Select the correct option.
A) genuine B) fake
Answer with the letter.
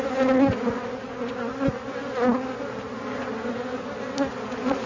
A